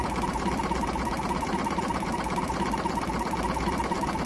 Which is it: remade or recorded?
recorded